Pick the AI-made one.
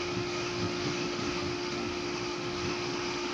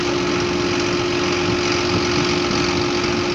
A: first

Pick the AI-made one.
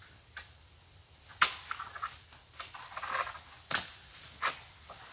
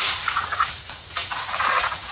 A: second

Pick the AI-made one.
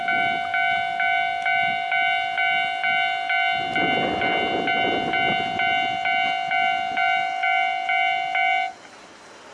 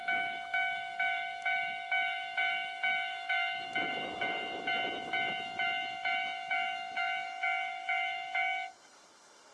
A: second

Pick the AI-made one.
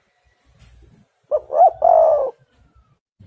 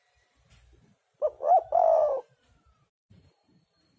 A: second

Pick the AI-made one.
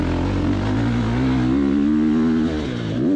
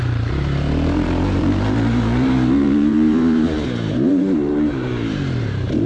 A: second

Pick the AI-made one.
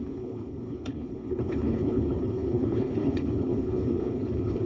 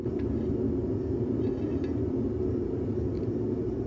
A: first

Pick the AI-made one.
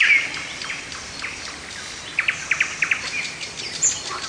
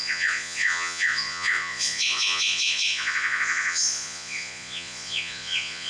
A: second